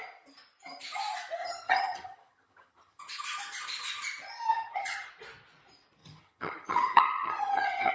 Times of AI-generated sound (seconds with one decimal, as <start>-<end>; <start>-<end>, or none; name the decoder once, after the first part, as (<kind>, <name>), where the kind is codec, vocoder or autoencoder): 1.4-3.0 (vocoder, HiFi-GAN); 4.5-5.1; 6.0-7.9